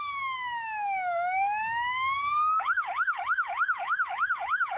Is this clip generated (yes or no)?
yes